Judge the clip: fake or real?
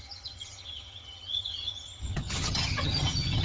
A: fake